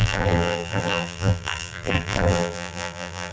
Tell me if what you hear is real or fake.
fake